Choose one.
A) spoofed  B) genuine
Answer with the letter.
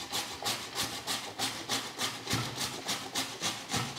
B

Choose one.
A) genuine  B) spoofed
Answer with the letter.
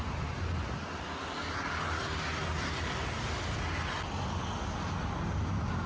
A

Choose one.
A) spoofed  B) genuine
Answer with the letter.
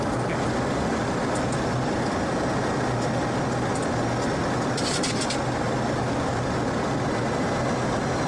B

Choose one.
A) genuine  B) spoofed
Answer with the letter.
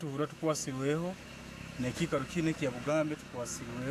B